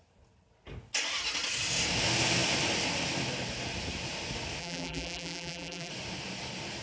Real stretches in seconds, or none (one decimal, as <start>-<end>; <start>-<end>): 0.0-4.6; 5.9-6.8